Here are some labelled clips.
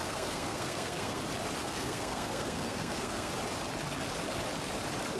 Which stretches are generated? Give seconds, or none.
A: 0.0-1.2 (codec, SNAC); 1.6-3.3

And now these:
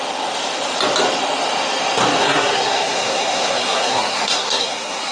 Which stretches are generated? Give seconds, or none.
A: 2.2-5.1 (codec, SNAC)